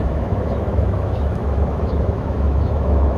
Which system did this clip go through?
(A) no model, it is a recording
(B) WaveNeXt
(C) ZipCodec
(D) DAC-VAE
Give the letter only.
D